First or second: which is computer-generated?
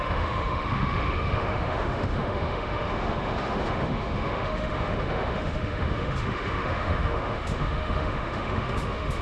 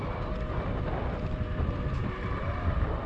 first